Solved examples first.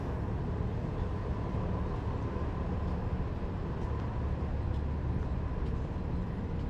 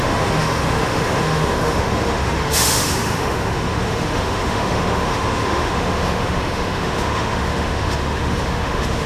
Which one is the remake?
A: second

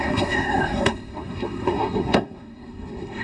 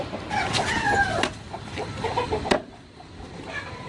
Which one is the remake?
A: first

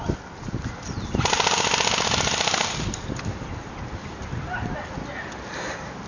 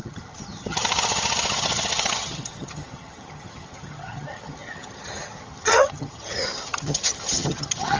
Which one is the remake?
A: second